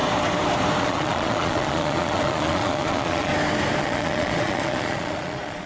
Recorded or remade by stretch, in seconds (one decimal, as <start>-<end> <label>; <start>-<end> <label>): 0.0-0.8 recorded; 0.8-3.3 remade; 3.3-3.8 recorded; 3.8-5.7 remade